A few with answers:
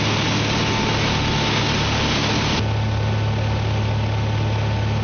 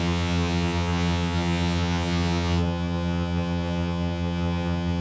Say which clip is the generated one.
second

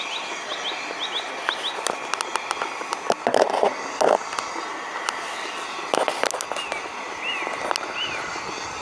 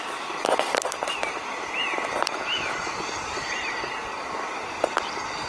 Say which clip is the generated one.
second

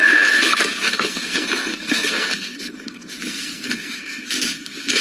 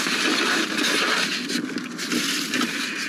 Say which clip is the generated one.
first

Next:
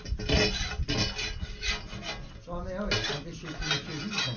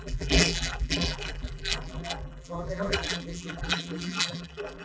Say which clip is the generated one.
second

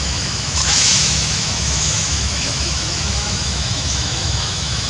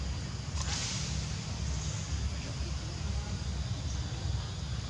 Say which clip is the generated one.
first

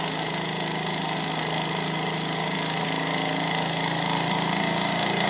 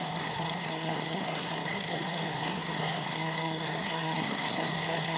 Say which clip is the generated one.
second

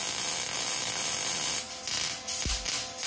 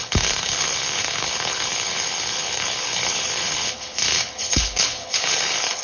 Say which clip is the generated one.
second